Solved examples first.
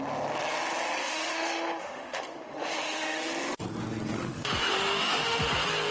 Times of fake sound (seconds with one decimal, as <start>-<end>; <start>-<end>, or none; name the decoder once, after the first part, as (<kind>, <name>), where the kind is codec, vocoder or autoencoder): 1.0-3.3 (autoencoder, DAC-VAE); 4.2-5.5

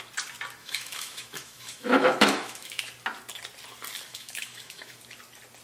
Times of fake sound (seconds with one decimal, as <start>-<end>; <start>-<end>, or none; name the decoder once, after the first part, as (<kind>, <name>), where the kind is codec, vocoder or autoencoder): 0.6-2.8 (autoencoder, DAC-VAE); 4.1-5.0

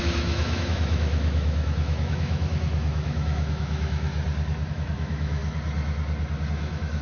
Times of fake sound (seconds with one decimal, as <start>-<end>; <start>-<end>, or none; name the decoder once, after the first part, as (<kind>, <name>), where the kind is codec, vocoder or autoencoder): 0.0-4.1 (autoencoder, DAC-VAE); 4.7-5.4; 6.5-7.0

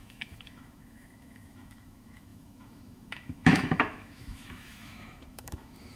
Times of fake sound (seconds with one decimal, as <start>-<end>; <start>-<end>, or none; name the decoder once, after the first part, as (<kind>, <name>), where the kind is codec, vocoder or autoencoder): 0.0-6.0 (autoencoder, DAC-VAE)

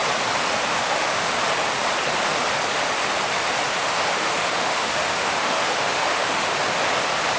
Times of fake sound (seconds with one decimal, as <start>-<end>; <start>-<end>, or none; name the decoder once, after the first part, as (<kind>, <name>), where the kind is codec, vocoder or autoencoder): 0.7-1.3 (autoencoder, DAC-VAE); 3.8-6.5

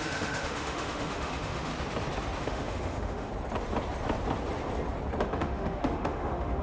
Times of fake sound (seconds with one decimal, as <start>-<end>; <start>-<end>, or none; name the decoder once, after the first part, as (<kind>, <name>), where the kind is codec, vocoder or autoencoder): 0.0-1.7 (autoencoder, DAC-VAE); 2.4-3.3; 5.2-6.6